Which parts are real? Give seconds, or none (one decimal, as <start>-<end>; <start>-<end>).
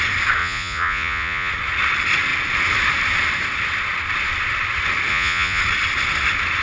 0.0-0.4; 1.5-5.1; 5.6-6.6